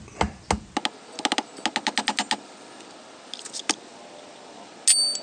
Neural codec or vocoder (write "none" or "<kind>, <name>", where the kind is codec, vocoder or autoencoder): none